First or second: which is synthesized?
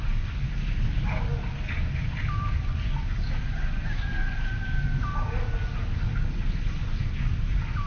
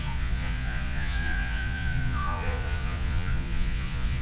second